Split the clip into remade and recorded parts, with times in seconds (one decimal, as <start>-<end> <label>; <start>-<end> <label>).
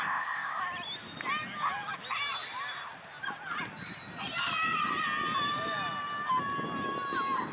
0.0-0.6 remade; 0.6-7.5 recorded